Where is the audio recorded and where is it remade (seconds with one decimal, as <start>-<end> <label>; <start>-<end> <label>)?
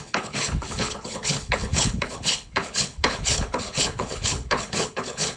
0.0-5.4 remade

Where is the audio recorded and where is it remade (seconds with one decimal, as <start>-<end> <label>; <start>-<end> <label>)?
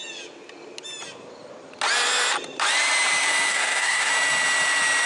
0.0-3.5 recorded; 3.5-4.1 remade; 4.1-5.1 recorded